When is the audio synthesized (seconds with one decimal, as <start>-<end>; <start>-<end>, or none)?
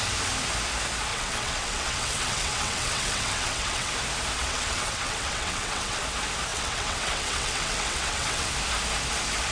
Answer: 1.1-3.9; 4.4-6.0; 6.5-8.5